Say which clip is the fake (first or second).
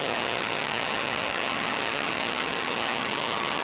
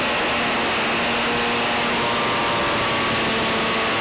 first